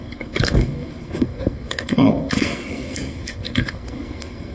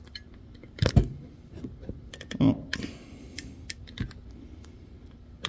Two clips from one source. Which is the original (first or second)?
second